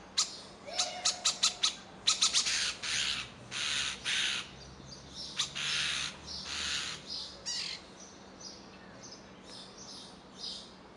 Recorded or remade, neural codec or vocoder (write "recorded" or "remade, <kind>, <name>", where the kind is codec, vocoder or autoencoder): recorded